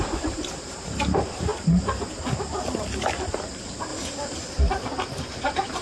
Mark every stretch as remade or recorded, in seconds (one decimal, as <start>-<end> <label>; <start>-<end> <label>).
0.0-1.5 remade; 1.5-3.3 recorded; 3.3-3.9 remade; 3.9-4.6 recorded; 4.6-5.8 remade